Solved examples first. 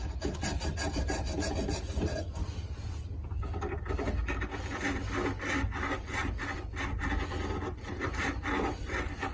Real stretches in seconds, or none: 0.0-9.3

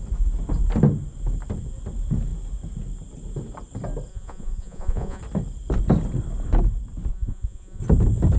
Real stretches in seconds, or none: 0.0-4.1; 5.2-7.1; 7.8-8.4

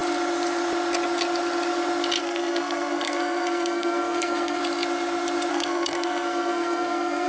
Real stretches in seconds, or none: 0.0-2.2; 4.6-5.5

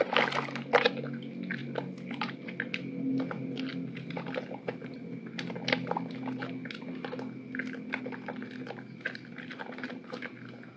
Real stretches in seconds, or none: 0.0-10.8

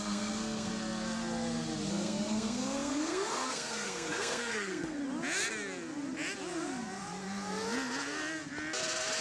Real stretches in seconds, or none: 0.7-1.9; 5.0-9.2